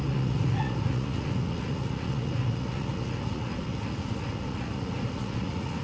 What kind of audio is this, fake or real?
fake